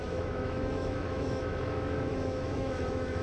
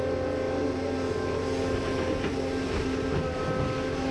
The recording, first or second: second